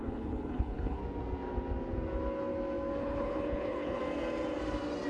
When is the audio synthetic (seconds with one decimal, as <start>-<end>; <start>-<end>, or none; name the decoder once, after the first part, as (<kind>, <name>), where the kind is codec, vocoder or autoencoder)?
0.0-1.0 (codec, HILCodec); 3.0-4.0